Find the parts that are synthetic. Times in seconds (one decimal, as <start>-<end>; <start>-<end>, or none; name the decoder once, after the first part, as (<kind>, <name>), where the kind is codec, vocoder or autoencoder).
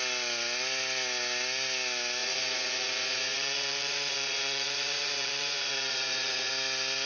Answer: 2.2-6.5 (vocoder, Vocos)